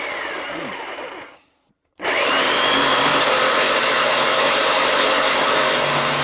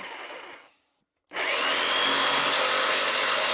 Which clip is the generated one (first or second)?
first